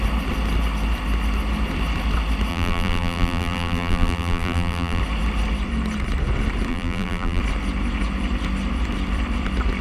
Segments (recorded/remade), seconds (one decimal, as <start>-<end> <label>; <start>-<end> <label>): 0.0-2.5 recorded; 2.5-5.0 remade; 5.0-6.7 recorded; 6.7-7.4 remade; 7.4-9.8 recorded